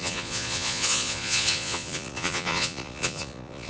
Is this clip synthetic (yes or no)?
yes